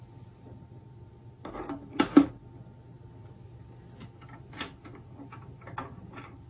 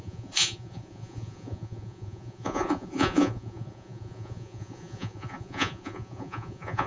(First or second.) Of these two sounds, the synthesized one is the second